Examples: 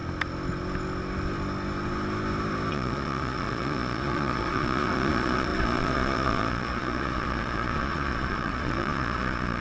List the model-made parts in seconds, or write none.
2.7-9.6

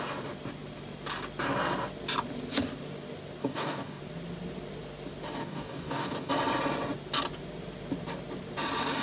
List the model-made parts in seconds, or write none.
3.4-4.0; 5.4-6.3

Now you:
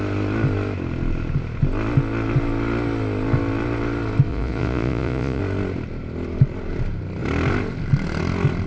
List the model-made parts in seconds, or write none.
4.3-5.4

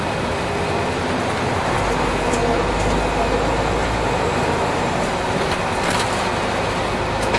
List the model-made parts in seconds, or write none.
3.8-5.1

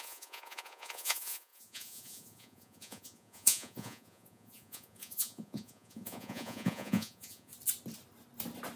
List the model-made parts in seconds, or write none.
0.0-7.5

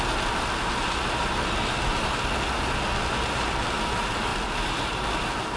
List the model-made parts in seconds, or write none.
none